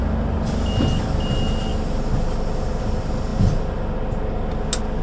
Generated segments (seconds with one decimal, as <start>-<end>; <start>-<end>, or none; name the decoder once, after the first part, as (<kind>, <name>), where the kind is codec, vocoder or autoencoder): none